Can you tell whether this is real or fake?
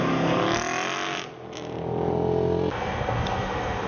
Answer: real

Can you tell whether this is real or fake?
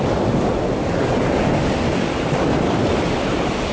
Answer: real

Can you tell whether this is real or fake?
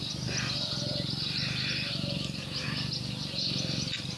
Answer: real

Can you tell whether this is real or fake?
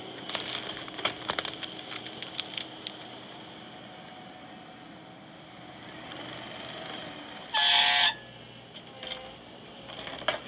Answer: real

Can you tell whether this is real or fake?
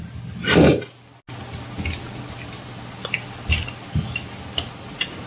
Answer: real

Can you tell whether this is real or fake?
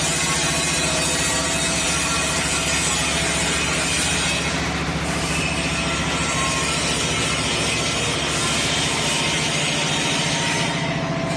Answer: real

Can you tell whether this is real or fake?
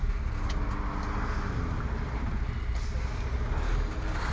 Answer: real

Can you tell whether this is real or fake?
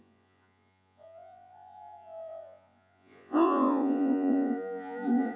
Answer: fake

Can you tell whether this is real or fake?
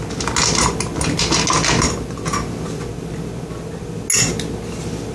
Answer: real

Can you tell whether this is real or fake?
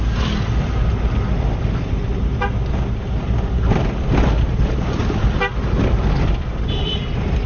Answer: real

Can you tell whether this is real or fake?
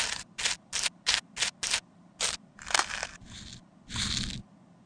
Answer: real